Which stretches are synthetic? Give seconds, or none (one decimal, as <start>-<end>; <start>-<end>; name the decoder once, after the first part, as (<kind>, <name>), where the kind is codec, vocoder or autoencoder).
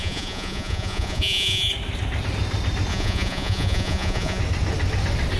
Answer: 0.0-1.7 (vocoder, Vocos); 2.9-4.4